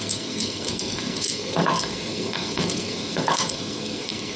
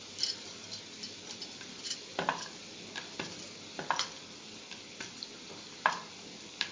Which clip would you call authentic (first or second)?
second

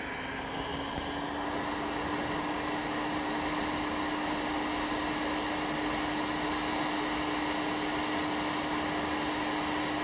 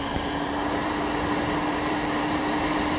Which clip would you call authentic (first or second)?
first